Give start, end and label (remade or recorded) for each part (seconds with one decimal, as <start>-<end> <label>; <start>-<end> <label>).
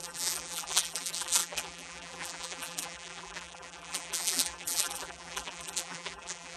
0.0-6.6 remade